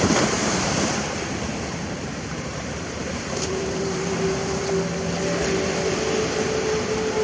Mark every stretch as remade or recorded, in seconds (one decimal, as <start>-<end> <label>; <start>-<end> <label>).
0.0-0.4 recorded; 0.4-4.7 remade; 4.7-7.2 recorded